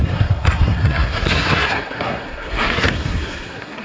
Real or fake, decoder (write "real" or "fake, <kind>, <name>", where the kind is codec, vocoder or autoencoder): fake, codec, SNAC